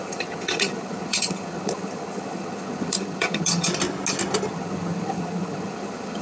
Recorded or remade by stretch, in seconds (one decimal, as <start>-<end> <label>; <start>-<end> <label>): 0.0-3.7 remade; 3.7-4.5 recorded; 4.5-6.2 remade